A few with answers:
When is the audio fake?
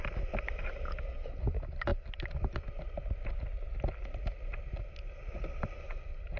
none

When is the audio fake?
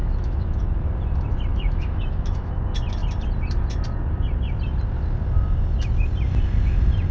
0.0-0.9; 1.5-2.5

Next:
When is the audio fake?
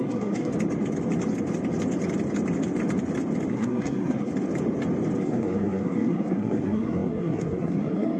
0.0-0.5; 3.5-4.3; 5.2-8.2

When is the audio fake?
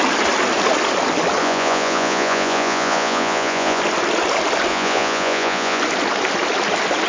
1.4-3.8; 4.7-5.8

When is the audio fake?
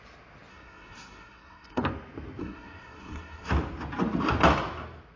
0.5-1.8; 2.4-3.5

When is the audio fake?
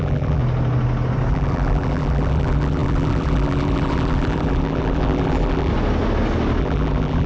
0.0-0.4; 1.3-5.7; 6.6-7.3